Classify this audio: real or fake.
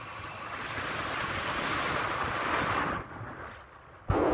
real